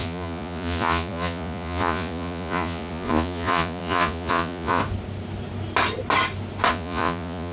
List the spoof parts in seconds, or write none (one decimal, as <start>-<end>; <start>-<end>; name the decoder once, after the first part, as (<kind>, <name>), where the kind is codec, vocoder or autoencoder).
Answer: 0.0-4.8 (vocoder, Vocos); 6.7-7.5